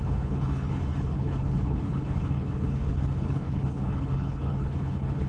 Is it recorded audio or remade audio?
remade